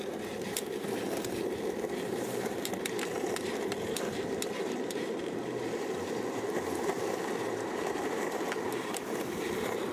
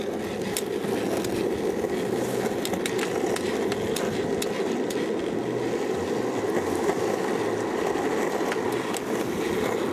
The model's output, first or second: first